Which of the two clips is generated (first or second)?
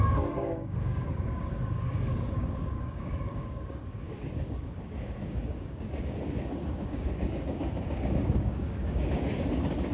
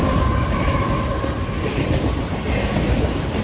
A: first